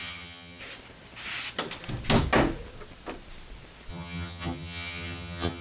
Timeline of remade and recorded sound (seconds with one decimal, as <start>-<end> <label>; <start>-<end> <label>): 0.0-0.6 remade; 0.6-3.9 recorded; 3.9-5.6 remade